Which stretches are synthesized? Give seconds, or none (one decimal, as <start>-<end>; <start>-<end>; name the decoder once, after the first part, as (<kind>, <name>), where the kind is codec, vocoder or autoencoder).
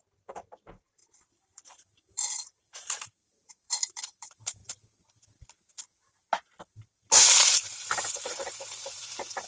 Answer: 0.0-4.6 (vocoder, BigVGAN v2); 7.1-9.5